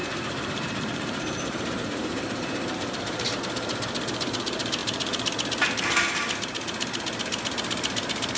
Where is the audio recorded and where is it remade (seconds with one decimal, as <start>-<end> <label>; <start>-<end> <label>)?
0.0-3.4 remade; 3.4-8.4 recorded